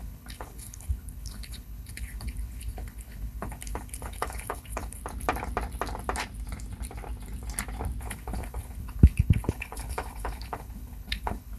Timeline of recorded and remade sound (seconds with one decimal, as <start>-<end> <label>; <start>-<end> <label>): 0.0-5.0 remade; 5.0-8.0 recorded; 8.0-11.6 remade